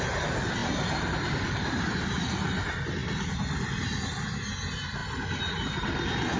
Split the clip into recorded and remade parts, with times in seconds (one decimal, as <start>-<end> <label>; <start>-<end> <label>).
0.0-6.4 recorded